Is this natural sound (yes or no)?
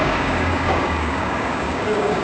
no